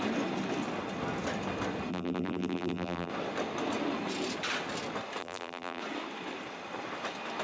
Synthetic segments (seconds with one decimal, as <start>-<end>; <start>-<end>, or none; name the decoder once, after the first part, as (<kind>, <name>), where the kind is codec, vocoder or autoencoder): 1.9-3.1 (vocoder, BigVGAN v2); 5.2-5.8